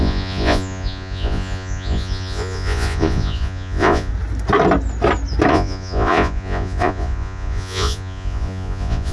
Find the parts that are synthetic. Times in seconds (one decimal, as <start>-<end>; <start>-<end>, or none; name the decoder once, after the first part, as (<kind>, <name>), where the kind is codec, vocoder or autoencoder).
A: 0.0-4.1 (vocoder, Vocos); 5.5-9.1